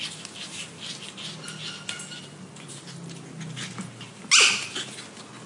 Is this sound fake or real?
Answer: real